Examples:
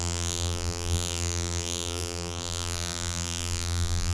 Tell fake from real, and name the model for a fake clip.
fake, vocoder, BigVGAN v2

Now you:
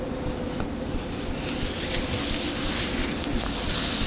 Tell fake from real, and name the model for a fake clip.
real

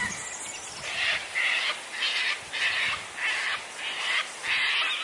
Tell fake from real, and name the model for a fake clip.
real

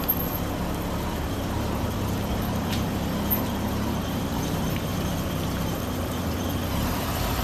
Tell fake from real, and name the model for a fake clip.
fake, vocoder, BigVGAN v2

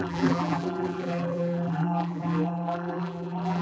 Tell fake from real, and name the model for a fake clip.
fake, vocoder, BigVGAN v2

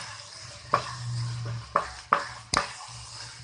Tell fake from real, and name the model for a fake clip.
fake, vocoder, BigVGAN v2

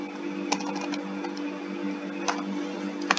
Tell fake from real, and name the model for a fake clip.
real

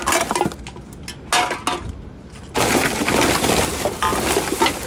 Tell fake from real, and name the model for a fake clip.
real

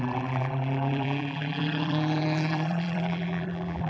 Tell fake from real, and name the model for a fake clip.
fake, vocoder, BigVGAN v2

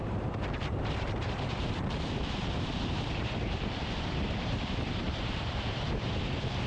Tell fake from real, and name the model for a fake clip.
fake, vocoder, BigVGAN v2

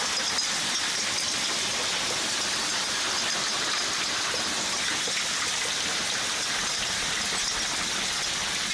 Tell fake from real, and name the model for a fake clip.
fake, vocoder, BigVGAN v2